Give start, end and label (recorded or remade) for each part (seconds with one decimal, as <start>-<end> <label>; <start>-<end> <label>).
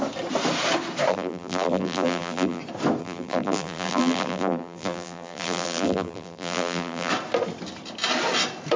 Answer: 0.0-1.1 recorded; 1.1-2.6 remade; 2.6-3.0 recorded; 3.0-7.1 remade; 7.1-8.8 recorded